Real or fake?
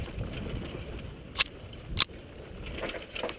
real